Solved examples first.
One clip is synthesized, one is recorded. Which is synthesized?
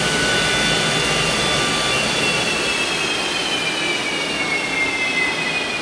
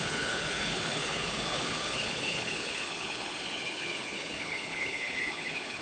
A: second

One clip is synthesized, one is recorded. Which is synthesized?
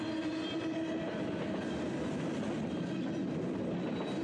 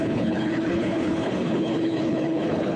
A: second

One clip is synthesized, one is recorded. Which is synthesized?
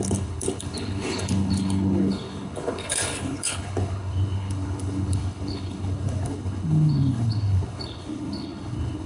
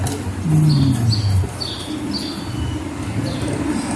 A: first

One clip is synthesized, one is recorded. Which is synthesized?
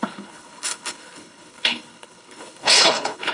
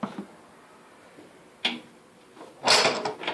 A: first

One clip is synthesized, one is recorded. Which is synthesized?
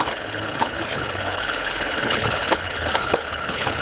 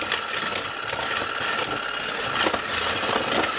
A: first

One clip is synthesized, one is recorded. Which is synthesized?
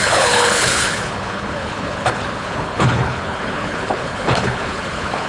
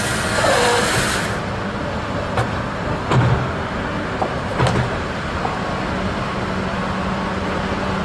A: first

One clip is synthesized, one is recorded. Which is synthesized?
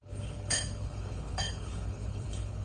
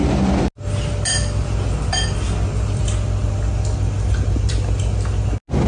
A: first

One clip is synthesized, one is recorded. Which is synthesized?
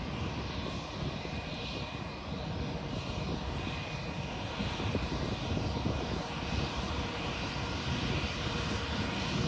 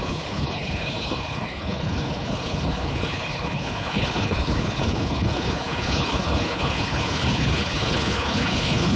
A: second